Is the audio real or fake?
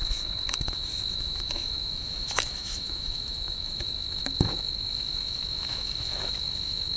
fake